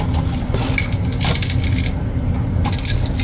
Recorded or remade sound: recorded